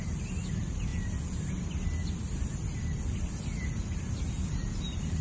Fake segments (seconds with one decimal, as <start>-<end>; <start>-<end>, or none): none